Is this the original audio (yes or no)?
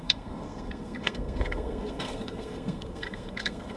no